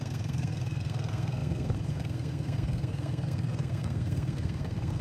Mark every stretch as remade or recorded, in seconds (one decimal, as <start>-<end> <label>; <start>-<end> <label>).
0.0-5.0 remade